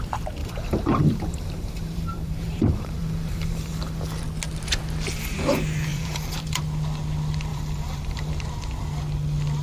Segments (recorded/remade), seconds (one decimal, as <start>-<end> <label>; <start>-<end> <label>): 0.0-0.4 recorded; 0.4-4.2 remade; 4.2-5.9 recorded; 5.9-6.6 remade; 6.6-7.5 recorded; 7.5-8.3 remade; 8.3-9.6 recorded